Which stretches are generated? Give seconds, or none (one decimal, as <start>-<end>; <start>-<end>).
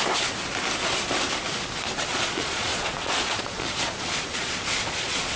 2.1-5.4